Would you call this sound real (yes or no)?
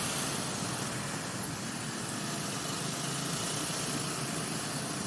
yes